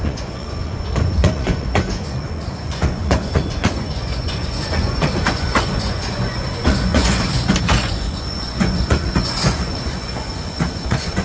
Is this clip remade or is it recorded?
remade